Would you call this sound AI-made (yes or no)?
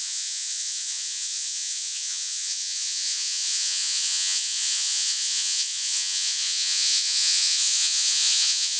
yes